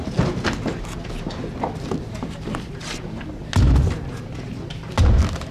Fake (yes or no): no